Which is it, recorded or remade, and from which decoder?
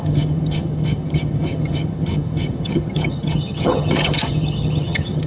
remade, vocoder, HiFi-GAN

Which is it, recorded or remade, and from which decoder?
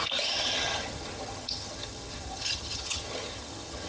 remade, vocoder, HiFi-GAN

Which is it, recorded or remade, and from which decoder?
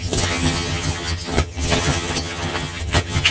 remade, vocoder, HiFi-GAN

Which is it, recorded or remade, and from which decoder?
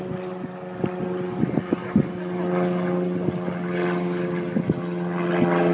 recorded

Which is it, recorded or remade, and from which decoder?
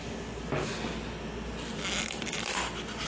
recorded